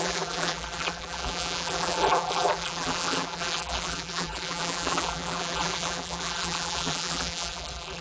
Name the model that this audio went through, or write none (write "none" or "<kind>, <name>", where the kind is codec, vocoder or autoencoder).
vocoder, BigVGAN v2